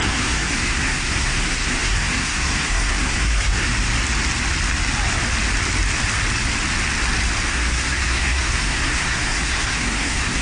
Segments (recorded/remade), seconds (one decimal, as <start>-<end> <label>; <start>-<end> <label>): 0.0-3.7 remade; 3.7-7.5 recorded; 7.5-10.4 remade